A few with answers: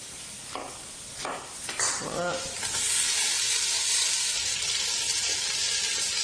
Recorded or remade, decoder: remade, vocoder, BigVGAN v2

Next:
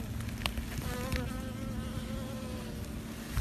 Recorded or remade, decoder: recorded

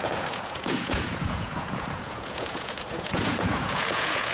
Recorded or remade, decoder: remade, vocoder, Vocos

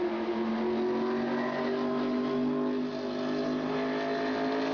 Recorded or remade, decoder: recorded